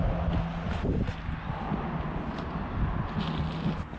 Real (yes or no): yes